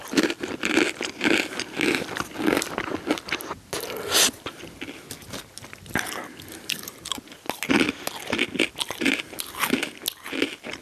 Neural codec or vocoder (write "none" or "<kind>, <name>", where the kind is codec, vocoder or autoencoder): none